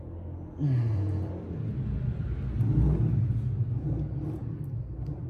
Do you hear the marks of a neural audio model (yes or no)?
no